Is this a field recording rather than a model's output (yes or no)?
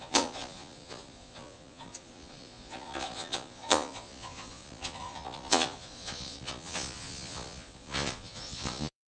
no